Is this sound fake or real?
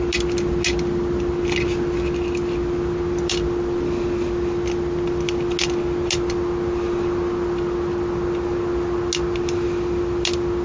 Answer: real